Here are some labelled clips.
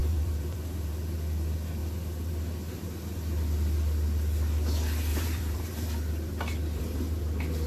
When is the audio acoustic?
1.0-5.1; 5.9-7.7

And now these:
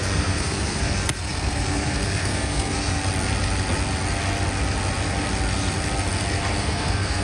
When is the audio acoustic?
3.0-6.6

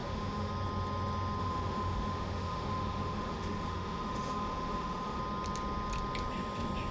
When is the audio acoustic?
0.5-1.4; 5.2-6.9

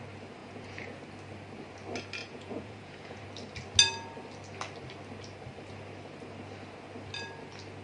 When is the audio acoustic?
0.0-0.4; 1.0-2.2; 3.2-7.8

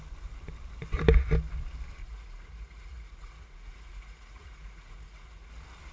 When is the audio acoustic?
0.0-2.0; 5.5-5.9